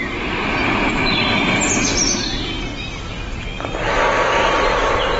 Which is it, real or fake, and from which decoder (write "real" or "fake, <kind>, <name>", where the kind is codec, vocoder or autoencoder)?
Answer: real